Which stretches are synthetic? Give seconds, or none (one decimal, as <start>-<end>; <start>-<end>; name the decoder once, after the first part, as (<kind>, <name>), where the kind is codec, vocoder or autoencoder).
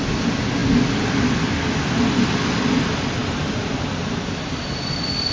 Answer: none